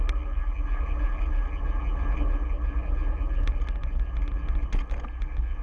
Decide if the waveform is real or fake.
real